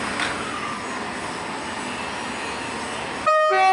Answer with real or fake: real